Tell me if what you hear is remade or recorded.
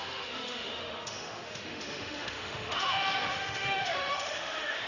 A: remade